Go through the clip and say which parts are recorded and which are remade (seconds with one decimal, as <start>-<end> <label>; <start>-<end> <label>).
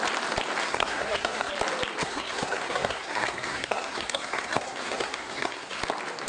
0.0-0.6 recorded; 0.6-1.5 remade; 1.5-2.0 recorded; 2.0-5.8 remade; 5.8-6.3 recorded